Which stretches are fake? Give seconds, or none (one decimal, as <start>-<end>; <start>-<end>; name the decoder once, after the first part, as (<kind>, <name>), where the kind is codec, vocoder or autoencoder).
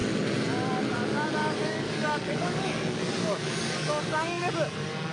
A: 1.4-4.5 (codec, DAC)